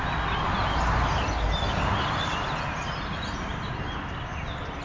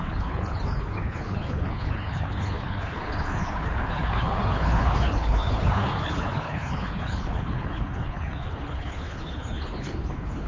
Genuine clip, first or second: first